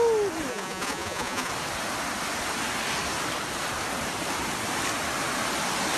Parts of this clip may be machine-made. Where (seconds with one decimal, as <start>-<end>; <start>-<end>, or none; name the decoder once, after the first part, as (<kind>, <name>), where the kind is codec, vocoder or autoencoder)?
0.5-1.5 (vocoder, Vocos)